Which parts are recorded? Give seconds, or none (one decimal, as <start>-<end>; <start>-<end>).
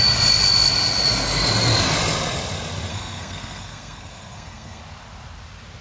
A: 0.0-2.9; 4.8-5.8